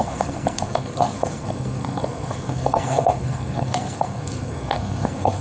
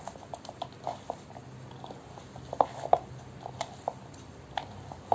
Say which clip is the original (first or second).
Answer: second